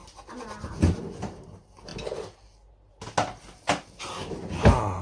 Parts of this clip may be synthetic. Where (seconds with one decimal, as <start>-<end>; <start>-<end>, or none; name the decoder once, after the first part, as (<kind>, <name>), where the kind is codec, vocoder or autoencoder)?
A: none